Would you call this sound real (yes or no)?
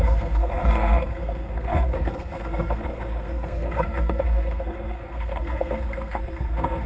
no